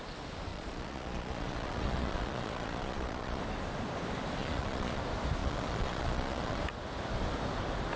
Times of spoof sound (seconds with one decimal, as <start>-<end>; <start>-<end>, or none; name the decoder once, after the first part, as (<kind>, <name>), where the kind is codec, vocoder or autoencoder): 0.5-3.4 (vocoder, Vocos); 4.4-5.0; 5.4-6.6